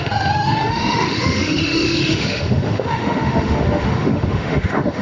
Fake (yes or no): yes